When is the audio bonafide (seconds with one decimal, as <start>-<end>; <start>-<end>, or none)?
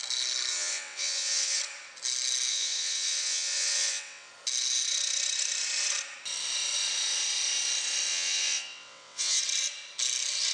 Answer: 0.0-0.5; 1.6-2.5; 4.3-8.1; 9.4-10.5